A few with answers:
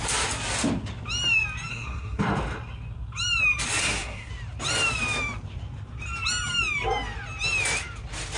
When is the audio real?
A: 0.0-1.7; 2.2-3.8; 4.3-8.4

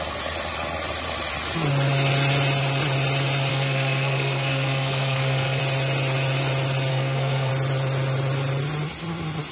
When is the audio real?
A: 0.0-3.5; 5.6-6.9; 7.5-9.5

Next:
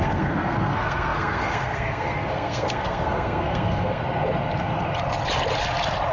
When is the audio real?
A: 4.0-6.1